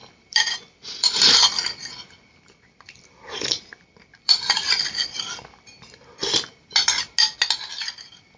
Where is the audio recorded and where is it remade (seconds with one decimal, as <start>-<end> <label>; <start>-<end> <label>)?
0.0-1.3 remade; 1.3-1.8 recorded; 1.8-6.5 remade; 6.5-8.4 recorded